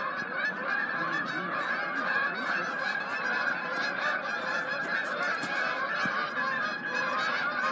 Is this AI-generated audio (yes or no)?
yes